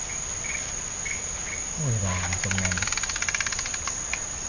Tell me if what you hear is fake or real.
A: real